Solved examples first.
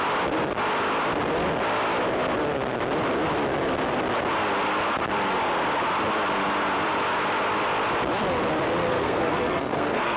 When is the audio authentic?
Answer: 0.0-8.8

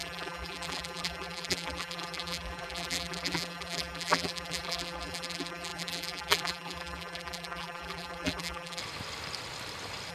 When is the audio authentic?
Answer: 8.8-10.1

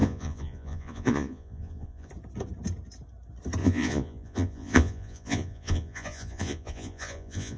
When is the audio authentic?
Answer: 2.1-3.6

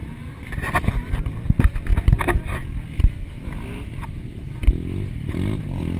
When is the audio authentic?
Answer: 0.0-6.0

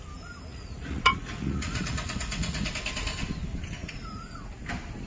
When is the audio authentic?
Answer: 0.0-0.5; 2.7-3.8; 4.5-5.1

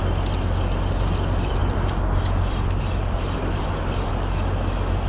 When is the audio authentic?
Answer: 0.0-5.1

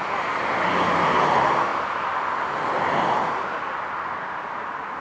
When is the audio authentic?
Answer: 0.0-5.0